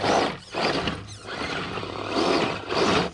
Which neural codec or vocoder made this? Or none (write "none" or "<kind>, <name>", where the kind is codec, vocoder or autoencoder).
none